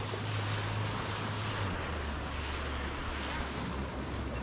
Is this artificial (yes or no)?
no